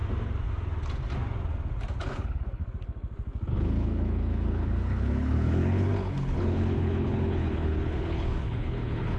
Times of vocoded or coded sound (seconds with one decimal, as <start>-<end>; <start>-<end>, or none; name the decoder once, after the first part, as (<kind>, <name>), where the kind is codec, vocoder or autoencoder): 2.0-2.6 (codec, HILCodec); 3.5-9.2